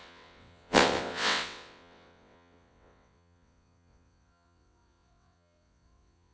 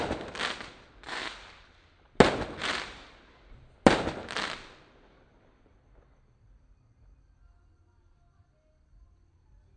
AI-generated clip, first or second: first